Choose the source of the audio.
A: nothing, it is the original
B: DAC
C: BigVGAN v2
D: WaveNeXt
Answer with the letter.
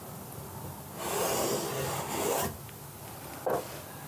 A